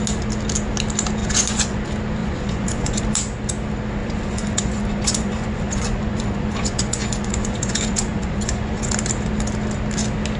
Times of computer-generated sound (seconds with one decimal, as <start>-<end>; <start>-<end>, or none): 1.2-1.8; 2.2-3.0; 4.0-8.9

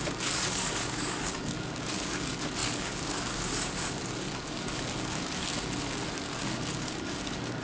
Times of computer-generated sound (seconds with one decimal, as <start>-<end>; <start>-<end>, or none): 0.0-5.5; 6.1-7.6

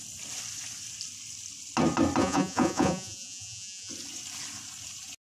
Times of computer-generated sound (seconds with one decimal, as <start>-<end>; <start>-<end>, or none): 2.2-3.9

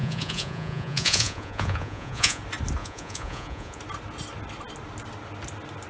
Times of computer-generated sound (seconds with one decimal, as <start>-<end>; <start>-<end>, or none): 0.0-2.4; 2.8-3.8

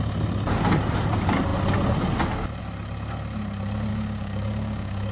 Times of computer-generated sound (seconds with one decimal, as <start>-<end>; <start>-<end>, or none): 3.9-5.1

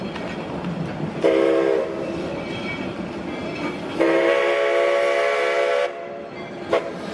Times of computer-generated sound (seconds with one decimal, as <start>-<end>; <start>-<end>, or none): none

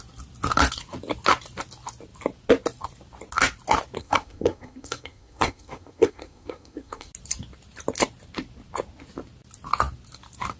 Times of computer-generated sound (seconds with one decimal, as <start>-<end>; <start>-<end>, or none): 4.0-7.1

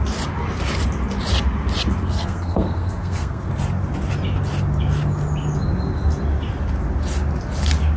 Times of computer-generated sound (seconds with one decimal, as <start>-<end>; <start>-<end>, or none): 2.0-3.5